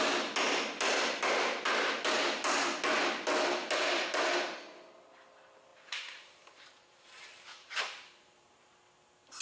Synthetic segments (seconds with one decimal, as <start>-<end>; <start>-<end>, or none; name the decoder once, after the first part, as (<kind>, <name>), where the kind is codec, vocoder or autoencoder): 3.6-4.3 (vocoder, BigVGAN v2); 5.7-8.8